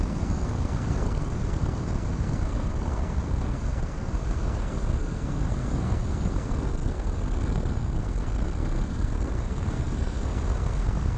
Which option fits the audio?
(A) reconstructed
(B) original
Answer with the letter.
A